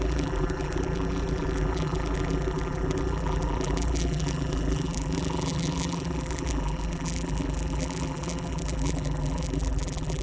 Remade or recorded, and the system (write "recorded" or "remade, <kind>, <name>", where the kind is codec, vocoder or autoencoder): remade, vocoder, BigVGAN v2